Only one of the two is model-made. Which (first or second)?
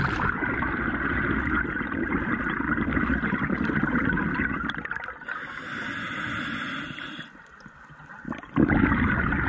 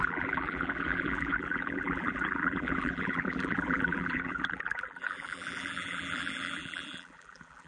second